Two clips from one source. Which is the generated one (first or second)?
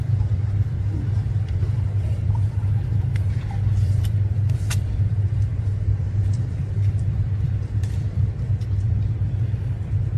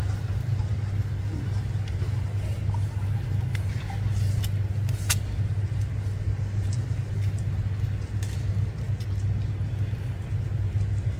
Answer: first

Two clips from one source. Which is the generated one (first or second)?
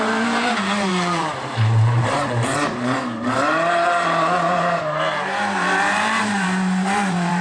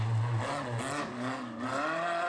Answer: first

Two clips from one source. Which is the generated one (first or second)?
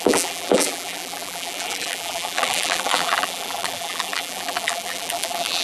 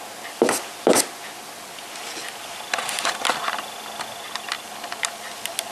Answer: first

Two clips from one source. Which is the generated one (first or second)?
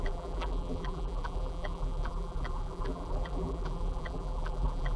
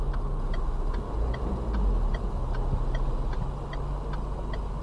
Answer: first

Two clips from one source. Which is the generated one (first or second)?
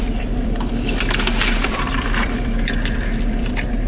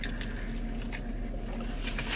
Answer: first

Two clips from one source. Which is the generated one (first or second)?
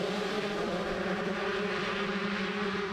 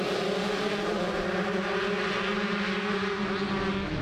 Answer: first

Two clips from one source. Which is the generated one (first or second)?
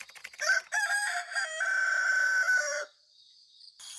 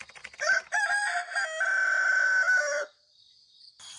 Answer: first